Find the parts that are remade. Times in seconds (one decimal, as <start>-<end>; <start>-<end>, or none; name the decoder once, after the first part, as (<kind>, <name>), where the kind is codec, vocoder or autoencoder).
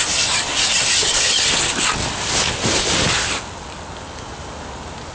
none